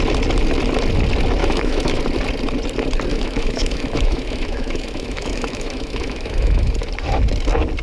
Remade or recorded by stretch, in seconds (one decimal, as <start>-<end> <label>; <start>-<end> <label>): 0.0-1.4 recorded; 1.4-2.0 remade; 2.0-3.1 recorded; 3.1-6.7 remade; 6.7-7.8 recorded